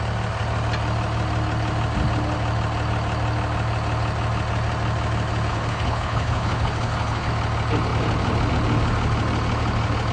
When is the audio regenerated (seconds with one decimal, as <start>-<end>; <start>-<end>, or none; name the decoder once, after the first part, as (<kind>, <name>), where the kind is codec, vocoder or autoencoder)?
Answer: 5.5-7.3 (codec, HILCodec)